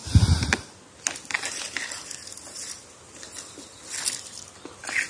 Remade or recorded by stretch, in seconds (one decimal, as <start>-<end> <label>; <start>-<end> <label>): 0.0-5.1 recorded